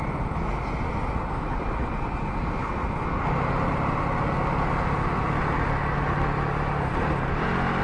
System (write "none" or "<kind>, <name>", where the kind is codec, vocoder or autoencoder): none